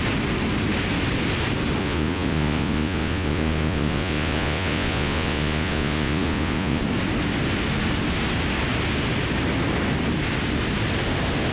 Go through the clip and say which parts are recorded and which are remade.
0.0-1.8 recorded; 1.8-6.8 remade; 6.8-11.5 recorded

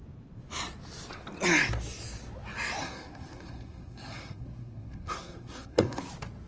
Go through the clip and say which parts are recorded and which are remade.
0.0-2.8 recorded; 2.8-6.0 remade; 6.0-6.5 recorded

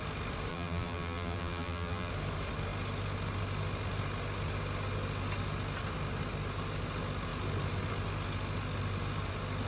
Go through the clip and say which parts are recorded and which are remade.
0.0-0.5 recorded; 0.5-2.1 remade; 2.1-9.7 recorded

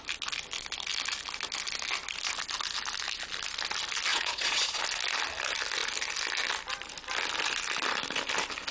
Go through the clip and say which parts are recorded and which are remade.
0.0-4.1 recorded; 4.1-4.8 remade; 4.8-8.7 recorded

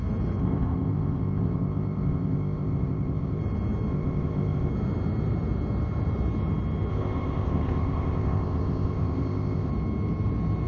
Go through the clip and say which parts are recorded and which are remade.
0.0-0.4 recorded; 0.4-3.4 remade; 3.4-3.9 recorded; 3.9-4.7 remade; 4.7-6.9 recorded; 6.9-9.7 remade; 9.7-10.7 recorded

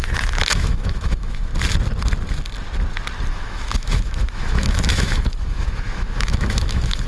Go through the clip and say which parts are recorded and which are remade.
0.0-1.5 remade; 1.5-3.3 recorded; 3.3-7.1 remade

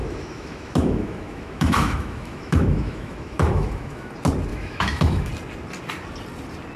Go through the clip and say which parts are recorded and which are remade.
0.0-4.1 remade; 4.1-4.5 recorded; 4.5-5.3 remade; 5.3-6.8 recorded

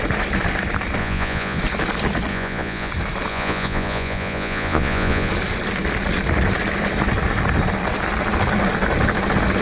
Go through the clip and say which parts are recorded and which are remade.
0.0-1.0 recorded; 1.0-1.6 remade; 1.6-2.3 recorded; 2.3-2.9 remade; 2.9-3.3 recorded; 3.3-5.3 remade; 5.3-9.6 recorded